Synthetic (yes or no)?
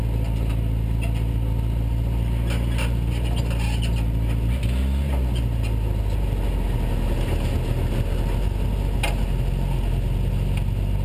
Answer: no